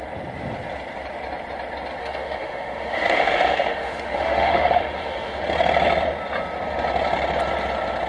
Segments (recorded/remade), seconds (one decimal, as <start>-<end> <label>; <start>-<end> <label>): 0.0-2.0 recorded; 2.0-5.4 remade; 5.4-8.1 recorded